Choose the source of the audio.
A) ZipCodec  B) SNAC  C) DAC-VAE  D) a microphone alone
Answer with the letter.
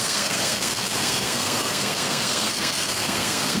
B